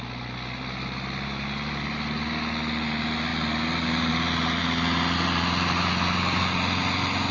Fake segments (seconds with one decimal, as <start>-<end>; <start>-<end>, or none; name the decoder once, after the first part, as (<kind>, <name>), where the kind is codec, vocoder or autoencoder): none